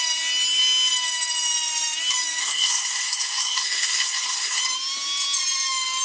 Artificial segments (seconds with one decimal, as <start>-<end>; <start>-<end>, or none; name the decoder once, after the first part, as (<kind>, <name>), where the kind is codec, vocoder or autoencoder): 2.4-4.6 (codec, SNAC)